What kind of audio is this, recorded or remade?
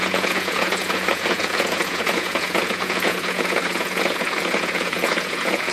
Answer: remade